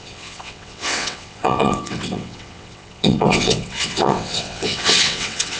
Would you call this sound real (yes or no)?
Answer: no